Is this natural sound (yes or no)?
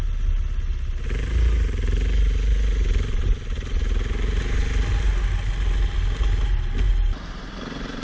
yes